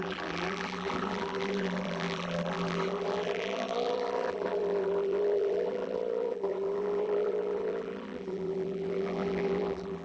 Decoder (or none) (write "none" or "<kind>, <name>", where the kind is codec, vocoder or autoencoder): vocoder, BigVGAN v2